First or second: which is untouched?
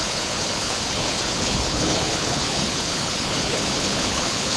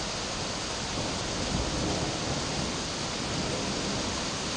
second